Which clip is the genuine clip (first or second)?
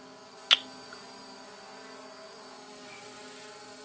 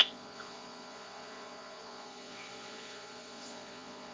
first